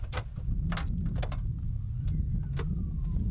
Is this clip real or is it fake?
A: real